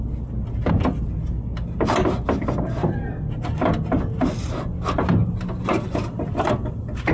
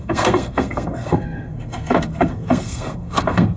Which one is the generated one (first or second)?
second